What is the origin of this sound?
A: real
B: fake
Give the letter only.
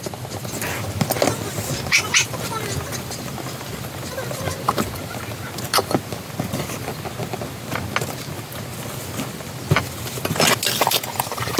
A